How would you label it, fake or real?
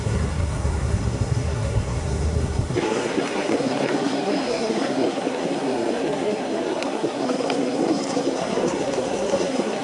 fake